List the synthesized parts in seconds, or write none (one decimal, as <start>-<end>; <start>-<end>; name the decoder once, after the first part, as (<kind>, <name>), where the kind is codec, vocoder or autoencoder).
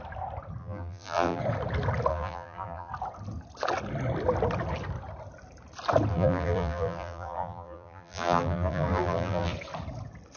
0.6-1.4 (vocoder, BigVGAN v2); 2.1-2.9; 6.1-9.5